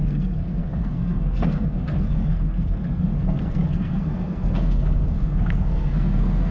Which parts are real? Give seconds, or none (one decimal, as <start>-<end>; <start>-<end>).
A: none